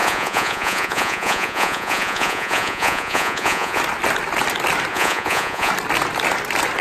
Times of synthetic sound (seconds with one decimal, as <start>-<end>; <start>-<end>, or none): 0.0-3.8; 4.9-5.7